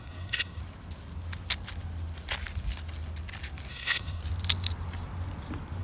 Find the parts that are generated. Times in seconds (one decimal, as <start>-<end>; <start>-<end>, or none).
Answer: 0.0-0.6; 3.7-4.2